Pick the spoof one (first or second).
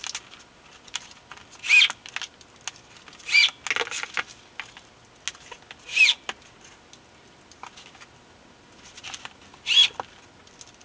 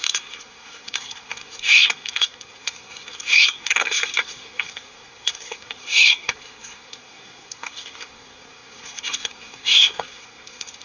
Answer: second